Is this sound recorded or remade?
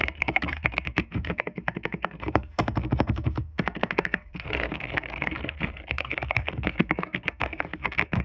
remade